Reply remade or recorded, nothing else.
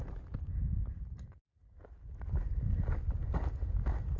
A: recorded